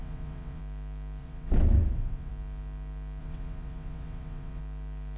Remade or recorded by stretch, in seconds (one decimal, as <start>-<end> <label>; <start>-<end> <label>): 0.0-0.6 remade; 0.6-1.2 recorded; 1.2-2.3 remade; 2.3-3.2 recorded; 3.2-4.6 remade; 4.6-5.2 recorded